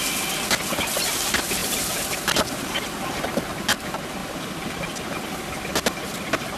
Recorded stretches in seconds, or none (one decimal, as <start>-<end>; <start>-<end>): 0.0-4.2; 5.4-6.6